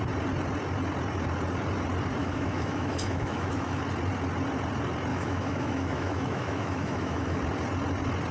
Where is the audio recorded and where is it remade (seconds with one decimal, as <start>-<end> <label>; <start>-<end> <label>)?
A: 0.0-2.2 recorded; 2.2-3.8 remade; 3.8-5.1 recorded; 5.1-7.4 remade; 7.4-8.3 recorded